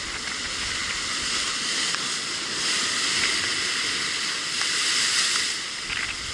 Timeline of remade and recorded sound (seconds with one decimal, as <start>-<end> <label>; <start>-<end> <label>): 0.0-6.3 recorded